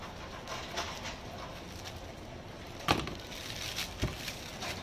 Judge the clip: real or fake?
real